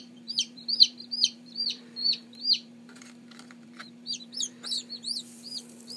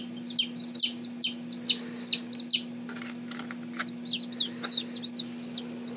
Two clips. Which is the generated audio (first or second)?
first